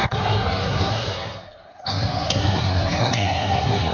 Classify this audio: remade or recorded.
remade